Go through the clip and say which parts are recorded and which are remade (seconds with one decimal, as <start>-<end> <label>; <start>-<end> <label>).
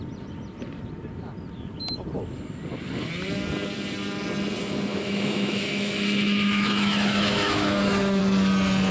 0.0-4.9 recorded; 4.9-8.2 remade; 8.2-8.9 recorded